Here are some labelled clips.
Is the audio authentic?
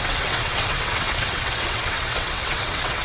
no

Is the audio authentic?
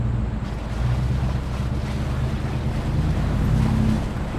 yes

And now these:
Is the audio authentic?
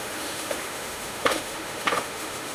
no